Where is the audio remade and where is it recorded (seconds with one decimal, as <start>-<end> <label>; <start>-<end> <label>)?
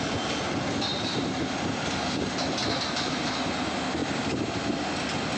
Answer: 0.0-0.9 recorded; 0.9-1.6 remade; 1.6-5.4 recorded